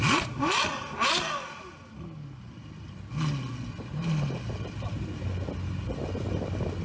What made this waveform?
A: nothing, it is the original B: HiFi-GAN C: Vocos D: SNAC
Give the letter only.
A